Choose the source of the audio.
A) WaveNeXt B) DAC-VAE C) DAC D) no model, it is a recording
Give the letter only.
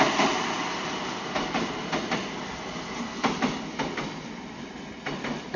D